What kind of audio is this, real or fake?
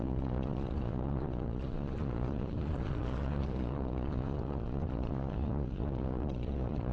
fake